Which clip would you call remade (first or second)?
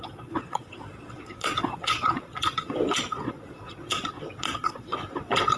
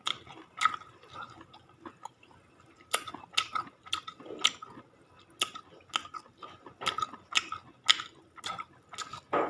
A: first